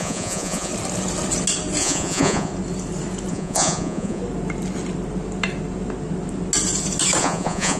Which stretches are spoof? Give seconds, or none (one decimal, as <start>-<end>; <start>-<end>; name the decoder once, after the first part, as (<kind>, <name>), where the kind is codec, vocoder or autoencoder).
0.0-0.7 (vocoder, Vocos); 1.8-2.5; 3.3-4.2; 7.2-7.8